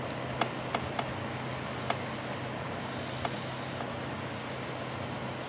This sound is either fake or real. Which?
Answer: real